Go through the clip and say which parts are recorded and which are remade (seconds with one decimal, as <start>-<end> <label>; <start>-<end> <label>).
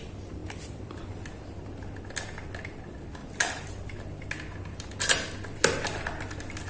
0.0-0.4 recorded; 0.4-1.1 remade; 1.1-3.2 recorded; 3.2-3.7 remade; 3.7-6.7 recorded